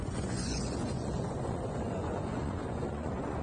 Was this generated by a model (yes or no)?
yes